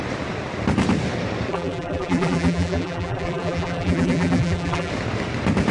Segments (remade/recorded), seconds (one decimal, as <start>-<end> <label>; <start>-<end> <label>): 0.0-1.5 recorded; 1.5-4.9 remade; 4.9-5.7 recorded